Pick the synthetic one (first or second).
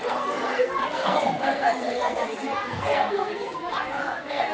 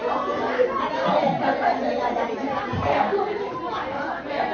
first